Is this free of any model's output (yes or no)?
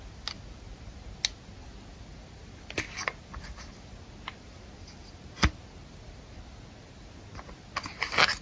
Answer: yes